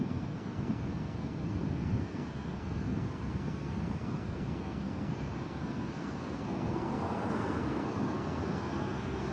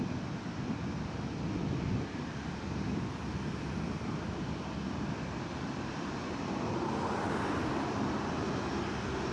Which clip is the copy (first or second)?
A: first